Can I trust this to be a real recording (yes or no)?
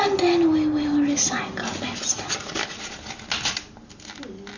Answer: yes